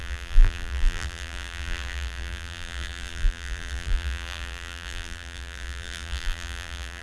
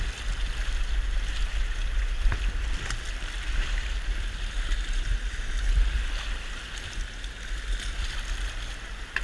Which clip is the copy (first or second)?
first